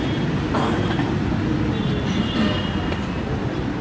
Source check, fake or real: real